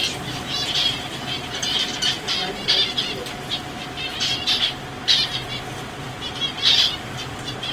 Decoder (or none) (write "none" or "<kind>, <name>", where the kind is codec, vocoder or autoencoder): none